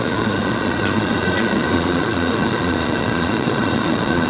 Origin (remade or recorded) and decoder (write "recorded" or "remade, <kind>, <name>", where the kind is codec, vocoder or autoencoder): remade, vocoder, Vocos